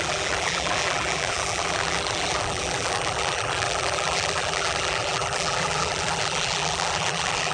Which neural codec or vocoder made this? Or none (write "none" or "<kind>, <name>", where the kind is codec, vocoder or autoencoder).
vocoder, BigVGAN v2